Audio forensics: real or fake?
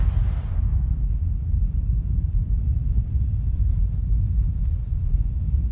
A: fake